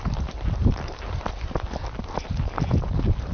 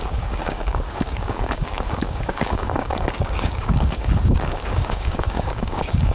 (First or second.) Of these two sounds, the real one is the first